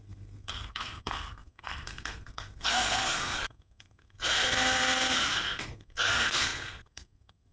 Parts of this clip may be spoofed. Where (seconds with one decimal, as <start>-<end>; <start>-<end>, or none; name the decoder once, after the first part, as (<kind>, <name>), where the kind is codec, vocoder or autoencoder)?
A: 0.0-7.5 (codec, SNAC)